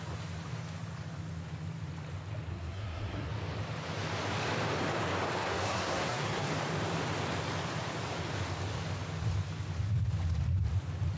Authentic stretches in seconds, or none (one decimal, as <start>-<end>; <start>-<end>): 0.0-2.5; 3.3-5.4; 6.5-11.2

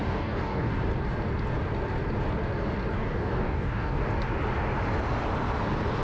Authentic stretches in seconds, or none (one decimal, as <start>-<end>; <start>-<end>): 0.7-2.9; 4.0-6.0